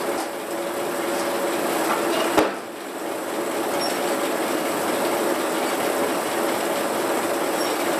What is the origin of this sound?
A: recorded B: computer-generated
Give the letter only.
A